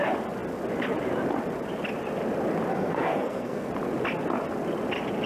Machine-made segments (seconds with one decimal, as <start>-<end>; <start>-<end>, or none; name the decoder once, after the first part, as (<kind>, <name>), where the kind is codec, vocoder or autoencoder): 2.7-3.7 (codec, SNAC)

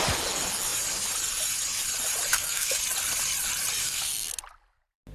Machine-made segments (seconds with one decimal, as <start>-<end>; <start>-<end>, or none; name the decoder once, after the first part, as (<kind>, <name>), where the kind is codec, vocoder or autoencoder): 2.3-2.8 (codec, SNAC); 3.8-4.3

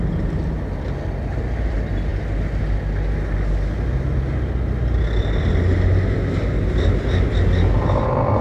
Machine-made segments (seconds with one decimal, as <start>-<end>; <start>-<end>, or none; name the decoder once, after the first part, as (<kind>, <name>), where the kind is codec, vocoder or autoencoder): none

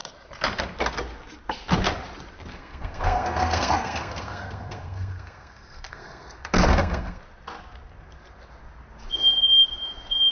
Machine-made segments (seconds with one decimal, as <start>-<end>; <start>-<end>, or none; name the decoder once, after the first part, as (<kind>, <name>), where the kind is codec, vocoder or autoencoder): 2.5-7.2 (codec, SNAC)

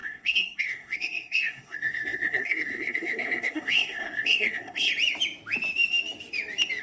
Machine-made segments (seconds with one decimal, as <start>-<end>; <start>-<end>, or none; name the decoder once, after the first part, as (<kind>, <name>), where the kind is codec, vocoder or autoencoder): 0.0-4.9 (codec, SNAC)

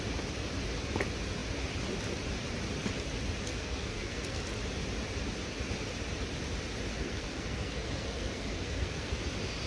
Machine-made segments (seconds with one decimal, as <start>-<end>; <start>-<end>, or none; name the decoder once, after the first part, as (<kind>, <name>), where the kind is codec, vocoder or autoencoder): 3.5-4.4 (codec, SNAC); 6.9-9.2

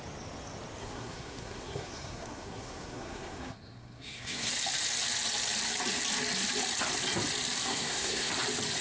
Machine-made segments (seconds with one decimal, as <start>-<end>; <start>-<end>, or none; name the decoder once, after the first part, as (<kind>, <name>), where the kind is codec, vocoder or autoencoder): 0.8-4.5 (codec, SNAC); 7.7-8.3

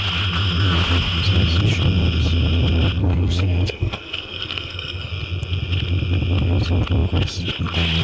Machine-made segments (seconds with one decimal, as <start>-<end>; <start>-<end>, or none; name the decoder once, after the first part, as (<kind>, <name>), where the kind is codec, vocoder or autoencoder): 3.0-5.1 (codec, SNAC)